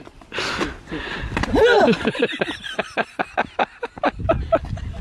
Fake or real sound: real